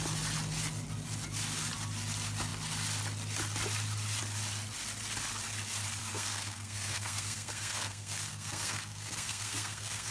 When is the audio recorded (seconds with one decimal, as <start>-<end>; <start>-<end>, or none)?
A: 0.0-6.0